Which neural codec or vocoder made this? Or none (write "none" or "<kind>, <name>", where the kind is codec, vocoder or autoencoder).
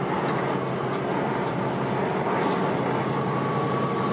none